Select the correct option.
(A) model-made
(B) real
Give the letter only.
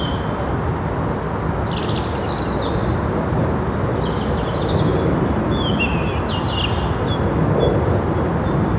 B